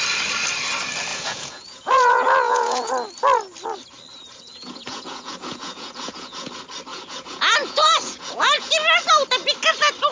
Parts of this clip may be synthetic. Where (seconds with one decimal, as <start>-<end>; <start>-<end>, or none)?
1.1-2.9; 4.2-6.5; 6.9-8.7